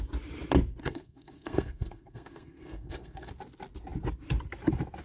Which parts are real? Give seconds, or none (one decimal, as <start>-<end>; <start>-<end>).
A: 0.0-0.8; 3.3-5.0